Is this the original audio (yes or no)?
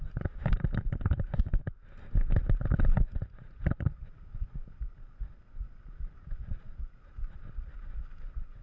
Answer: yes